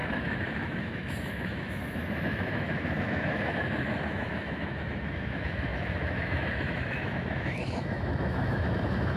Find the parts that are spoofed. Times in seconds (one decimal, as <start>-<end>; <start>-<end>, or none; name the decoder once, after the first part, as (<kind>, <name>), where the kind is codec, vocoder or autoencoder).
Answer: 0.0-9.2 (autoencoder, DAC-VAE)